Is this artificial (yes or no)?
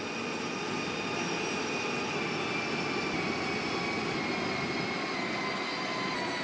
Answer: no